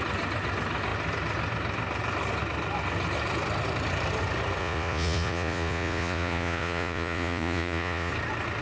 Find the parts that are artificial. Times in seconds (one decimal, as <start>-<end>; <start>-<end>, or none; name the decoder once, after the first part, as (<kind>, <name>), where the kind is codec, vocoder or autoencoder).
4.6-8.1 (vocoder, Vocos)